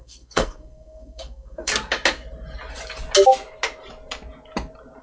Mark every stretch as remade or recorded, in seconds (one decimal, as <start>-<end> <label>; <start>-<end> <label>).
0.0-1.7 remade; 1.7-5.0 recorded